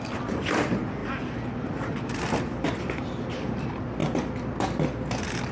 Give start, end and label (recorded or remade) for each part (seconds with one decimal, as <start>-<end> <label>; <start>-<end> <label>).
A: 0.0-4.0 remade; 4.0-5.5 recorded